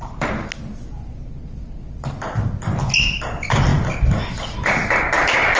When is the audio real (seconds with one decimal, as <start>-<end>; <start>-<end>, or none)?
0.0-5.6